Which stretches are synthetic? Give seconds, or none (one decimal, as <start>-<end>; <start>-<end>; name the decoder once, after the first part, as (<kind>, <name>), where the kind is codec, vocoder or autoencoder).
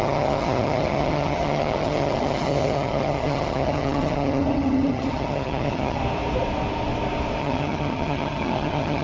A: 0.0-6.0 (vocoder, HiFi-GAN); 7.4-9.0